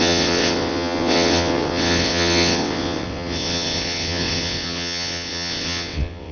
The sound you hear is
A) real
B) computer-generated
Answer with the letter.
B